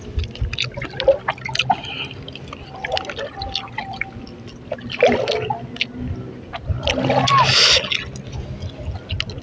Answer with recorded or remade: recorded